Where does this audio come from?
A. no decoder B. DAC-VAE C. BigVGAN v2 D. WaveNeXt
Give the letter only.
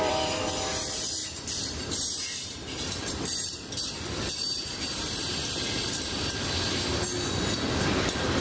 C